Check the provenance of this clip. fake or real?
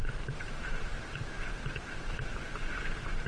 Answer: fake